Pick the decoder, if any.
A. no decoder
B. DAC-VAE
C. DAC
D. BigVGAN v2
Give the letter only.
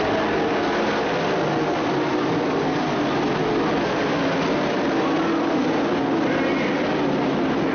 A